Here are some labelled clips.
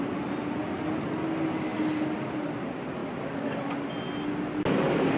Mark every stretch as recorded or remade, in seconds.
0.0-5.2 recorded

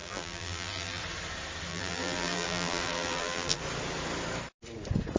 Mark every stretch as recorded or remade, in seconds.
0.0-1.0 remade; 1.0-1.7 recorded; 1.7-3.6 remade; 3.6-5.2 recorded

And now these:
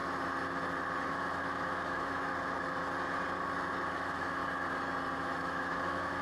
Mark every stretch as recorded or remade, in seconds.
0.0-1.1 recorded; 1.1-2.3 remade; 2.3-3.9 recorded; 3.9-4.4 remade; 4.4-5.2 recorded; 5.2-6.2 remade